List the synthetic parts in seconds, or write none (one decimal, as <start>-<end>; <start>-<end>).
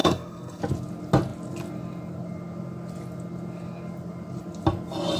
0.0-0.6